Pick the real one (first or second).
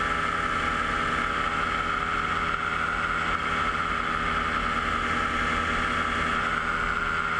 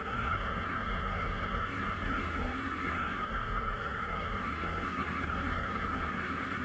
first